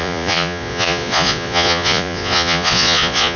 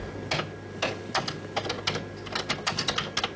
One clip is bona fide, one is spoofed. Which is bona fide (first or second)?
second